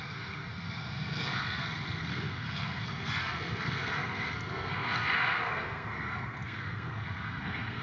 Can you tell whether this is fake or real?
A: fake